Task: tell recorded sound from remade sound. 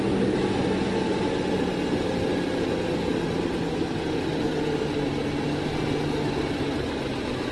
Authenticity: recorded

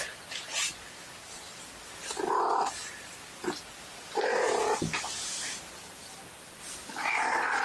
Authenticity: recorded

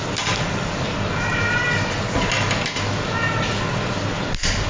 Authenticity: recorded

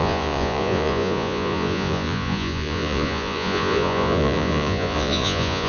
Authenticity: remade